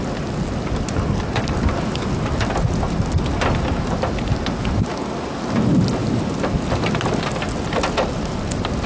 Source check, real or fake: real